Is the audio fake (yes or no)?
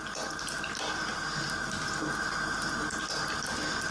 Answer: no